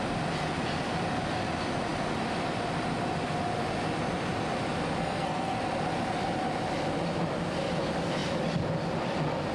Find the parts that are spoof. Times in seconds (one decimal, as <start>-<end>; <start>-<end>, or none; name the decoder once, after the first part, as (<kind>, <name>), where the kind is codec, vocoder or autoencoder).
5.0-5.6 (codec, SNAC)